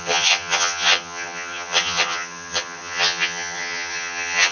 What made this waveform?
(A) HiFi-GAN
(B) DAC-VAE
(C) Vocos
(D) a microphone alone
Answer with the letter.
A